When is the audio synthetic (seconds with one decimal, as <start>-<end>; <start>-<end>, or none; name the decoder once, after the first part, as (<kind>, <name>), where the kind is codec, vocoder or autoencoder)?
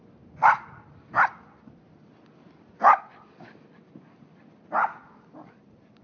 0.0-6.0 (vocoder, BigVGAN v2)